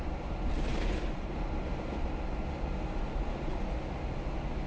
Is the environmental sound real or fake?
real